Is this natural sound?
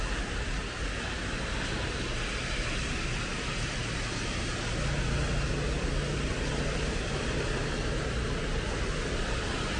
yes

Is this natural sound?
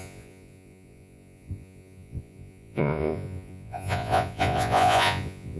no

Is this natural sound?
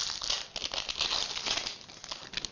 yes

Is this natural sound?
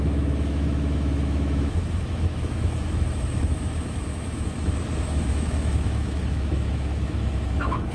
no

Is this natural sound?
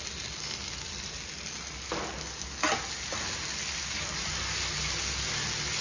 yes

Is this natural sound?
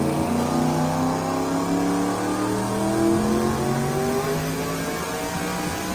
yes